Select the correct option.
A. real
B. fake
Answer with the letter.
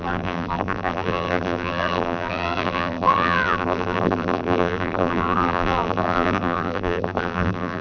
B